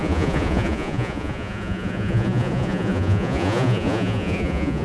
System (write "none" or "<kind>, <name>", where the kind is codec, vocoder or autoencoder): vocoder, Vocos